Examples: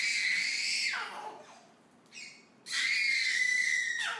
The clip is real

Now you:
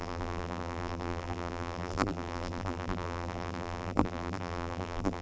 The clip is fake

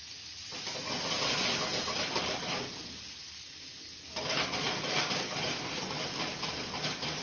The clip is real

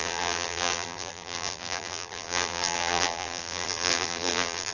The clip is fake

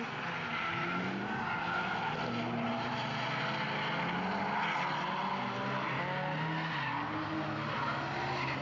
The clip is real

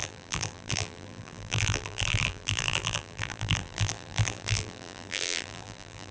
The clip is fake